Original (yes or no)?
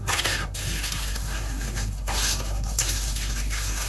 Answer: no